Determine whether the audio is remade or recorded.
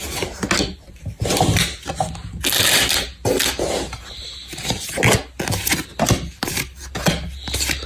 recorded